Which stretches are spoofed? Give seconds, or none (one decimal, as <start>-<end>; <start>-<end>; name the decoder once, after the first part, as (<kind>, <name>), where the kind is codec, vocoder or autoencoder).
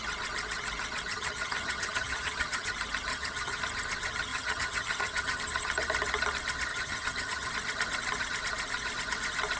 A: 1.1-2.7 (vocoder, HiFi-GAN); 3.1-3.6; 4.3-5.4; 6.7-7.5